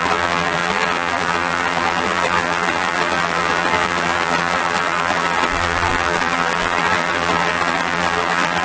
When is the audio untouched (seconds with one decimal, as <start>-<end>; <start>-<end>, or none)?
none